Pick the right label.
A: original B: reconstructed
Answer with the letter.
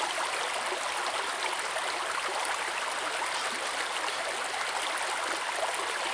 A